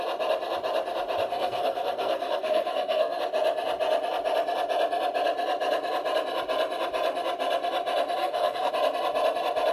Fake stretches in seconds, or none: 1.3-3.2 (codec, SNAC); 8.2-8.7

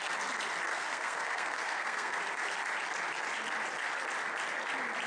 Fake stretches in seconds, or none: 0.7-2.2 (codec, SNAC)

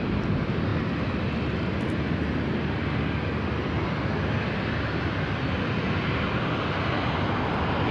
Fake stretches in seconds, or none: none

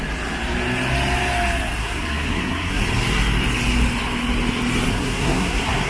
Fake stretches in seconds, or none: 1.8-2.8 (codec, SNAC); 4.9-5.9

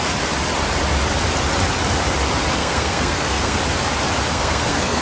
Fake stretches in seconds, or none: 2.6-3.6 (codec, SNAC); 4.3-5.0